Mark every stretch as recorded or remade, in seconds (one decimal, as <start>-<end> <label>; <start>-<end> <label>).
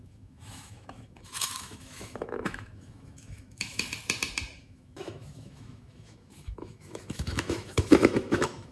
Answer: 0.0-3.9 remade; 3.9-4.6 recorded; 4.6-8.7 remade